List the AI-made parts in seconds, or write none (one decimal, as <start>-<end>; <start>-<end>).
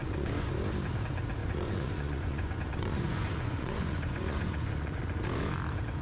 0.0-0.5; 1.4-5.0